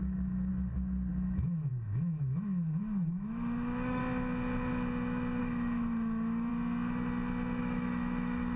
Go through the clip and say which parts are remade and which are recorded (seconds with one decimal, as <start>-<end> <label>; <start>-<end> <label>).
0.0-0.5 remade; 0.5-1.1 recorded; 1.1-4.0 remade; 4.0-5.4 recorded; 5.4-6.5 remade; 6.5-7.6 recorded; 7.6-8.6 remade

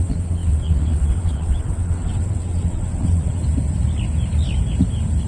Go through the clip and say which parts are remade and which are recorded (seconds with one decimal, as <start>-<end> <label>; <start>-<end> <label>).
0.0-3.4 remade; 3.4-5.3 recorded

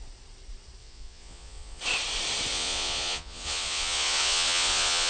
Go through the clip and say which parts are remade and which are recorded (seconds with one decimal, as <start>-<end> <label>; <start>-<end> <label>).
0.0-0.8 recorded; 0.8-1.8 remade; 1.8-2.5 recorded; 2.5-5.1 remade